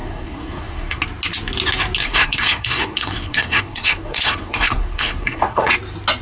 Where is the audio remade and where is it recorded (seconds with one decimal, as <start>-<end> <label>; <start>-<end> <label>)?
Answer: 0.0-1.0 remade; 1.0-2.0 recorded; 2.0-5.7 remade; 5.7-6.2 recorded